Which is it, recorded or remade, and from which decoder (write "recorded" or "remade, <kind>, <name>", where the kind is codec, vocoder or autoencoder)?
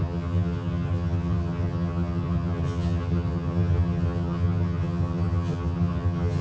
remade, vocoder, HiFi-GAN